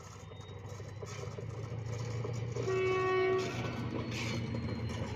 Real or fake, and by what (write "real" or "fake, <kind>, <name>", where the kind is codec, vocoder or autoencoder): real